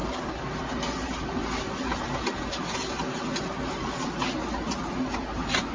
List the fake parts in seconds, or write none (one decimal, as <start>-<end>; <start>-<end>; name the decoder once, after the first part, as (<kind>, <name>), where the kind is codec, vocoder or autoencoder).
1.0-1.9 (vocoder, BigVGAN v2); 5.3-5.7